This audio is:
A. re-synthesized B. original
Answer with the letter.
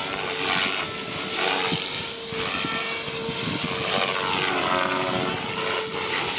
B